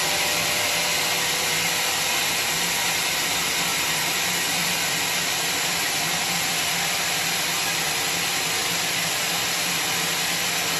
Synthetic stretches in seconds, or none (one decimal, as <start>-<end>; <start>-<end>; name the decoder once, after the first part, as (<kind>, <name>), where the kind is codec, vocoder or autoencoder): 3.7-6.7 (vocoder, BigVGAN v2); 8.6-9.2